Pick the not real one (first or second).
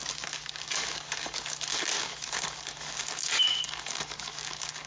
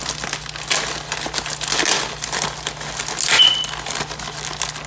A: first